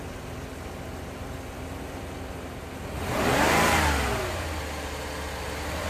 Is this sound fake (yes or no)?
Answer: no